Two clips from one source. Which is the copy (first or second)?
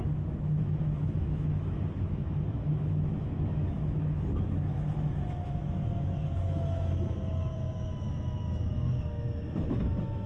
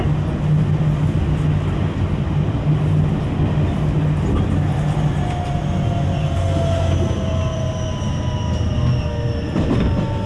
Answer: first